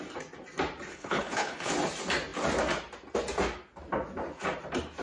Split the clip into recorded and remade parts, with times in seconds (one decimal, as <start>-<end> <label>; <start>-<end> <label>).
0.0-0.9 recorded; 0.9-1.7 remade; 1.7-5.0 recorded